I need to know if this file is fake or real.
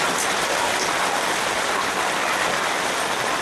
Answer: real